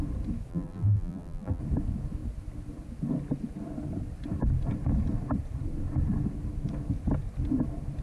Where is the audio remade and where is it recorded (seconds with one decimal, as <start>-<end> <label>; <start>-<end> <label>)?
0.0-0.5 recorded; 0.5-1.6 remade; 1.6-8.0 recorded